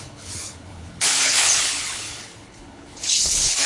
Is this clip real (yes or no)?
no